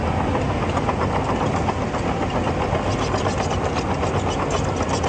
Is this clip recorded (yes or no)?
yes